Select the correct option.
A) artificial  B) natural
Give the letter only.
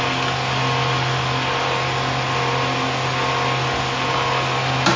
B